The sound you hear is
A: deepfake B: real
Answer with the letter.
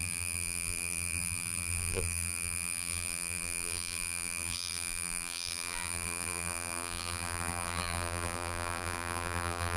A